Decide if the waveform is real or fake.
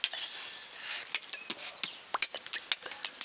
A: real